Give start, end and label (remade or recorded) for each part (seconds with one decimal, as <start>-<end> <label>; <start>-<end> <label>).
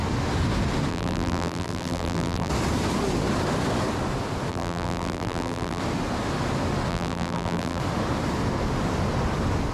0.0-0.9 recorded; 0.9-2.5 remade; 2.5-4.5 recorded; 4.5-5.8 remade; 5.8-6.9 recorded; 6.9-7.8 remade; 7.8-9.7 recorded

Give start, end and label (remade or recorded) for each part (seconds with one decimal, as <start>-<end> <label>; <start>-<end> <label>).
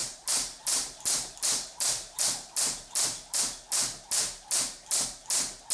0.0-3.4 remade; 3.4-5.7 recorded